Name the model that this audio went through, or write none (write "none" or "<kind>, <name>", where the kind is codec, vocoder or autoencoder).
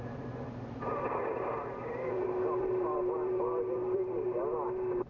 vocoder, BigVGAN v2